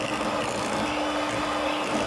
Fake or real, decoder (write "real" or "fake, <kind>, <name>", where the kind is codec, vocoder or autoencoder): real